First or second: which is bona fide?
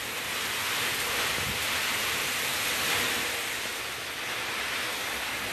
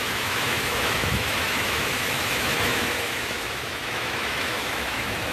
first